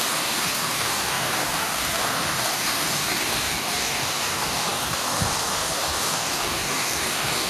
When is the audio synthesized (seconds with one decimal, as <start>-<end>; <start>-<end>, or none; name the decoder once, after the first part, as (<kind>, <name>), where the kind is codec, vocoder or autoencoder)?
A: 0.0-7.5 (codec, DAC)